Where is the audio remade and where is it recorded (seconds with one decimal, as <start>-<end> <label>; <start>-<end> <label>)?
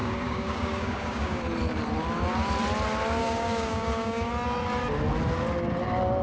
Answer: 0.0-1.4 remade; 1.4-3.2 recorded; 3.2-4.3 remade; 4.3-6.2 recorded